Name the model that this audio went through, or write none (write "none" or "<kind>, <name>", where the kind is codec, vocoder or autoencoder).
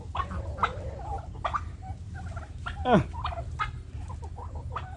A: none